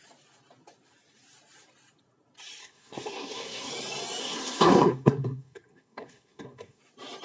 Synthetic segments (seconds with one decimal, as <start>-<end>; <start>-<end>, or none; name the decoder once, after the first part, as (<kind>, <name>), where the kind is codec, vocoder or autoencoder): 2.6-3.7 (codec, SNAC); 4.2-6.8